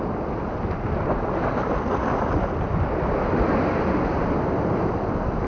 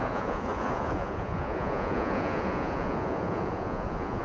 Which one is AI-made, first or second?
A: second